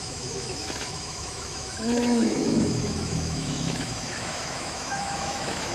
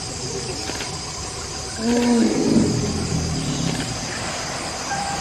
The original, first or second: second